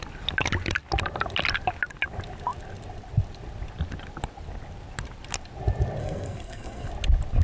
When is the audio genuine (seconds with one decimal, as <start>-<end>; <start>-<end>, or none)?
0.0-6.0; 6.9-7.4